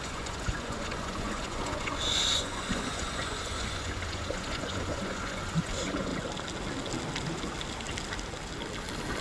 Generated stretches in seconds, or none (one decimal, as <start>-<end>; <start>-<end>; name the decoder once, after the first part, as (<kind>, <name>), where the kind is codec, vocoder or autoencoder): 0.0-6.1 (vocoder, Vocos)